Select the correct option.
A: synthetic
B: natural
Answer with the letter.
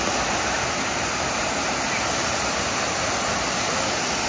B